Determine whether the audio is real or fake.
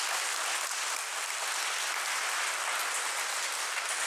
real